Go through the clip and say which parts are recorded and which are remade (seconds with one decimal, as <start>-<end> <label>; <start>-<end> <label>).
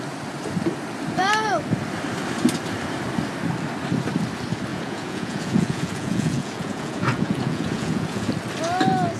0.0-4.7 recorded; 4.7-8.3 remade; 8.3-9.2 recorded